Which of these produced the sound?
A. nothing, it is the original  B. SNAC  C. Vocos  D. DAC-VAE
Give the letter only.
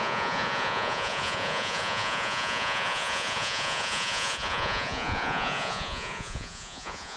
C